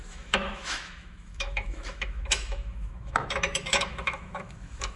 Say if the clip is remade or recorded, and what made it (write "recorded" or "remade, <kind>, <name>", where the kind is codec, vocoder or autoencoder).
remade, autoencoder, DAC-VAE